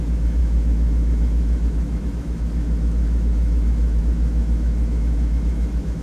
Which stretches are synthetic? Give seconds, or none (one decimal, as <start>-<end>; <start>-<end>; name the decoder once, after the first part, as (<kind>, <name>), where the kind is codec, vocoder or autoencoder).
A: 0.0-6.0 (autoencoder, DAC-VAE)